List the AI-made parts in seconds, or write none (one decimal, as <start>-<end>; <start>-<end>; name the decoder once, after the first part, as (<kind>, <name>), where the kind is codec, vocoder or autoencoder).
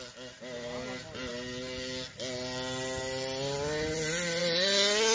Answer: none